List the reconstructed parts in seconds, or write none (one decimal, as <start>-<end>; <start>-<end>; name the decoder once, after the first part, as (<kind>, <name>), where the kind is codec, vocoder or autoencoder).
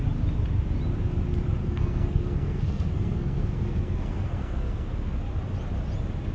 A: 1.6-5.2 (codec, SNAC)